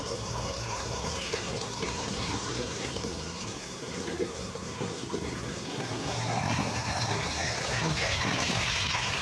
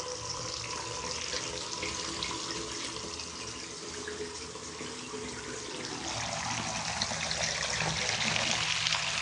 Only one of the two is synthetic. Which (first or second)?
first